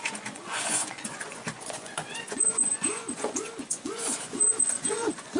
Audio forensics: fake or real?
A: fake